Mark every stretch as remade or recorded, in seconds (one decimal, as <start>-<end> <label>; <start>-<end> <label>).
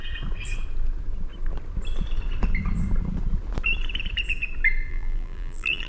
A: 0.0-4.9 recorded; 4.9-5.9 remade